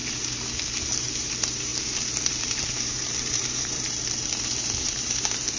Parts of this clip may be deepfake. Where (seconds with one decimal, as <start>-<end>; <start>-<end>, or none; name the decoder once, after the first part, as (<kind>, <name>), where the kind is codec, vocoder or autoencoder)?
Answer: 0.7-5.6 (vocoder, BigVGAN v2)